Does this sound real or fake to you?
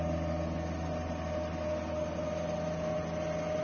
real